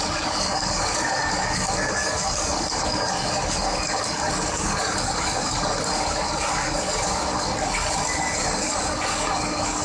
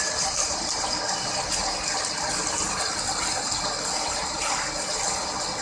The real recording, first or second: second